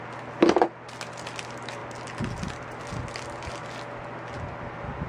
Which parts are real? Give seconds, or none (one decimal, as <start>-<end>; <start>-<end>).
0.0-5.1